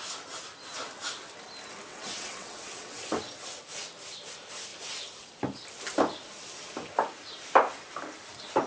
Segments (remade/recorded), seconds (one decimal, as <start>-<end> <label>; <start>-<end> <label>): 0.0-1.9 recorded; 1.9-3.2 remade; 3.2-8.7 recorded